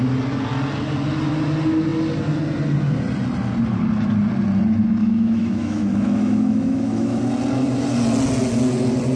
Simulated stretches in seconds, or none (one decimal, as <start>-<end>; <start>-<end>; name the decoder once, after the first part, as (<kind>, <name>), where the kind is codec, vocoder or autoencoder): 5.0-7.2 (autoencoder, DAC-VAE)